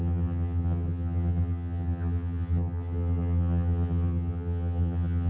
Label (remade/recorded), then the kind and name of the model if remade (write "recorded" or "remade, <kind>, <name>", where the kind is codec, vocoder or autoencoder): remade, vocoder, HiFi-GAN